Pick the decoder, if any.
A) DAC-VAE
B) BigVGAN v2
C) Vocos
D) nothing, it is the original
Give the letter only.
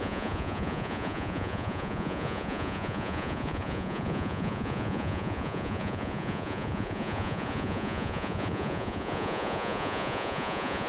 C